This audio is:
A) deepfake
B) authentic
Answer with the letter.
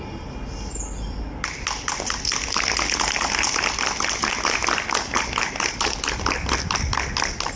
B